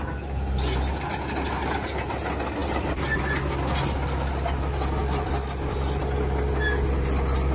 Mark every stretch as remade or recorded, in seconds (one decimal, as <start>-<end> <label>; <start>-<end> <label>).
0.0-5.0 recorded; 5.0-6.0 remade; 6.0-7.5 recorded